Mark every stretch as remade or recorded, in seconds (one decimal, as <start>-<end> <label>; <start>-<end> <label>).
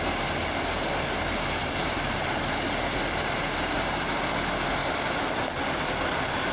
0.0-1.6 recorded; 1.6-2.4 remade; 2.4-6.5 recorded